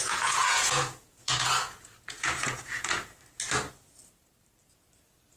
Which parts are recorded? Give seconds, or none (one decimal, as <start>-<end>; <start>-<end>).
3.2-5.4